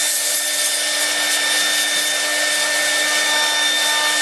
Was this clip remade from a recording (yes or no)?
no